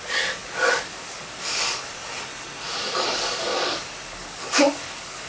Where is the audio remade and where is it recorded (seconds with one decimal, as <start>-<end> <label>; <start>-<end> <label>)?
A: 0.0-2.1 remade; 2.1-2.7 recorded; 2.7-5.3 remade